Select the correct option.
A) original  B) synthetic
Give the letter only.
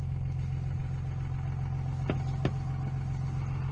A